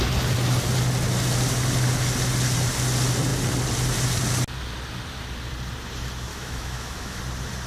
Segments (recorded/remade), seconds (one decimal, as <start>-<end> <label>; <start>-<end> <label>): 0.0-6.3 recorded; 6.3-7.2 remade; 7.2-7.7 recorded